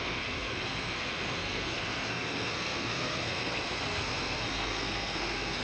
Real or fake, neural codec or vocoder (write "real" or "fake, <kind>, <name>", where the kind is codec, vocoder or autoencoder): fake, codec, SNAC